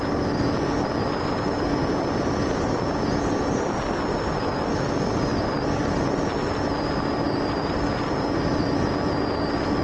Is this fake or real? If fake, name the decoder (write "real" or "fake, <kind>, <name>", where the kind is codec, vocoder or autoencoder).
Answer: real